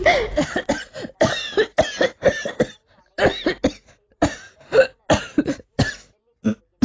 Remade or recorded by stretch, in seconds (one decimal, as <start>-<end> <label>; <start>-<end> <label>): 0.0-0.7 recorded; 0.7-4.8 remade; 4.8-5.3 recorded; 5.3-5.9 remade; 5.9-6.8 recorded